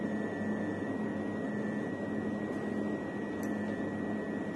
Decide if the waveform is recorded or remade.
recorded